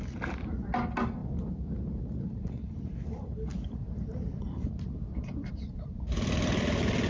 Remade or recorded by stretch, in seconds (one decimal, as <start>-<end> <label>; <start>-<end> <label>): 0.0-7.1 recorded